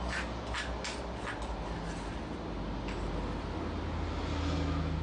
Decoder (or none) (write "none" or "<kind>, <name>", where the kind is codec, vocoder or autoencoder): none